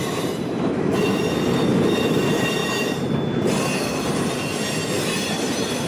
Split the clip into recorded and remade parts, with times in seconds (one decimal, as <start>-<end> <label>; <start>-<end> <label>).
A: 0.0-2.6 remade; 2.6-5.3 recorded; 5.3-5.9 remade

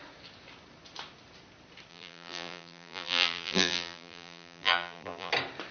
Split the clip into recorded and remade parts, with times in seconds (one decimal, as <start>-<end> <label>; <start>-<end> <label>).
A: 0.0-1.9 recorded; 1.9-5.3 remade; 5.3-5.7 recorded

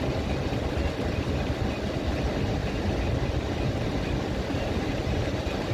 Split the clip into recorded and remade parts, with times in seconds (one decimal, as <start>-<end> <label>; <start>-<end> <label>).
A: 0.0-5.7 recorded

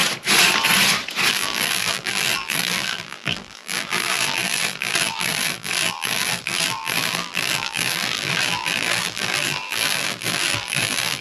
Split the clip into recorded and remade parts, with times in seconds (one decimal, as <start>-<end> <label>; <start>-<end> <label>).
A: 0.0-1.3 recorded; 1.3-11.2 remade

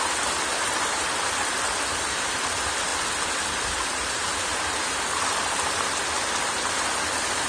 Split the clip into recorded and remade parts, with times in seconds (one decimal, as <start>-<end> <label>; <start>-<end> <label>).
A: 0.0-0.5 recorded; 0.5-1.1 remade; 1.1-7.5 recorded

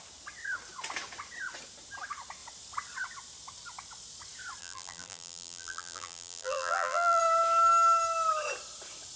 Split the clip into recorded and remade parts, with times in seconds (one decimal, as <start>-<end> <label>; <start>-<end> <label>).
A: 0.0-4.6 recorded; 4.6-7.2 remade; 7.2-9.2 recorded

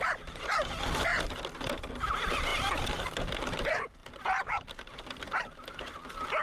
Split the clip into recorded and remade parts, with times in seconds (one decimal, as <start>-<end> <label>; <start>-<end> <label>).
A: 0.0-4.0 recorded; 4.0-5.5 remade; 5.5-6.4 recorded